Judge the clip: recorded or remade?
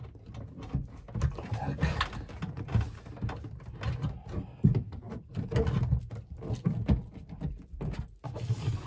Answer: recorded